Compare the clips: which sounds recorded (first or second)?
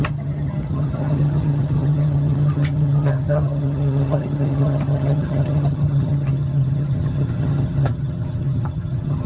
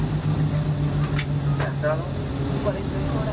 second